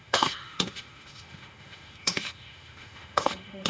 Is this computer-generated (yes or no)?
yes